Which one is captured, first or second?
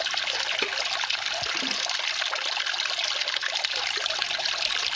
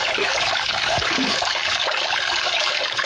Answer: first